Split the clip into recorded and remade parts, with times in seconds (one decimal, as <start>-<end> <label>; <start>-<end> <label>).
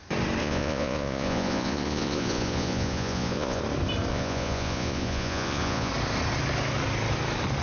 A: 0.0-0.4 recorded; 0.4-3.6 remade; 3.6-4.1 recorded; 4.1-5.9 remade; 5.9-7.6 recorded